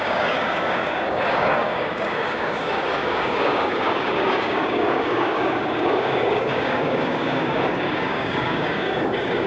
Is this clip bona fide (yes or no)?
no